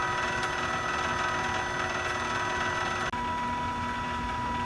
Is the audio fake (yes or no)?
no